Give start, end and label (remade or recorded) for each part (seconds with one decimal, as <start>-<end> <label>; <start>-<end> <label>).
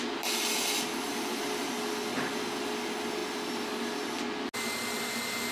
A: 0.0-5.5 recorded